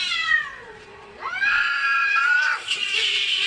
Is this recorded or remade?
remade